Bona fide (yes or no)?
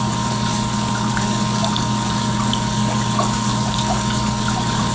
no